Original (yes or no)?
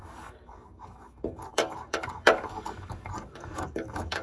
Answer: no